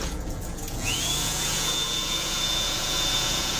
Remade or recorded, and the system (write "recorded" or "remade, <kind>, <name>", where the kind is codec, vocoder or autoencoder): remade, vocoder, Vocos